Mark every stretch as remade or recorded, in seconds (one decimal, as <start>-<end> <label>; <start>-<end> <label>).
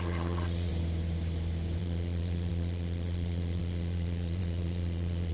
0.0-0.7 remade; 0.7-1.8 recorded; 1.8-5.3 remade